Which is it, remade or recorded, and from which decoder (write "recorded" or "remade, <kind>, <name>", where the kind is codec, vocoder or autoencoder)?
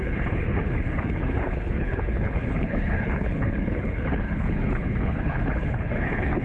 remade, codec, HILCodec